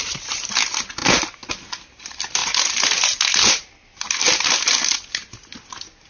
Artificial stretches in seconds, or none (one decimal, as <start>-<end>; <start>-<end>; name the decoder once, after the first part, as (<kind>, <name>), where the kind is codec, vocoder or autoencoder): none